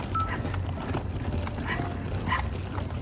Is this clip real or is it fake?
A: real